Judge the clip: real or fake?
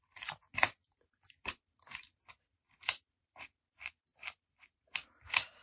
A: fake